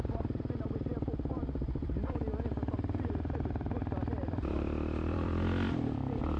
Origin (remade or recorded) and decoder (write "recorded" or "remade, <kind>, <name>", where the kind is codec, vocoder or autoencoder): remade, vocoder, BigVGAN v2